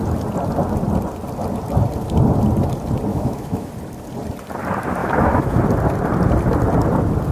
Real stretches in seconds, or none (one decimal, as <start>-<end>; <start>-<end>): 0.0-3.1; 3.7-5.0; 5.6-7.3